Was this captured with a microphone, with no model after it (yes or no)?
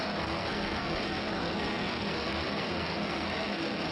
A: no